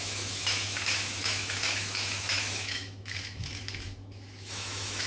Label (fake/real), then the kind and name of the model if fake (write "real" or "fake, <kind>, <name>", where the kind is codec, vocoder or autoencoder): fake, autoencoder, DAC-VAE